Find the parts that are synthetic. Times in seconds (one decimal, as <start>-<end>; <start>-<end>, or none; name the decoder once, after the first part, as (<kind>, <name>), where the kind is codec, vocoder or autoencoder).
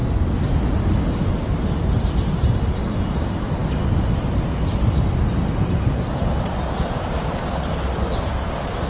none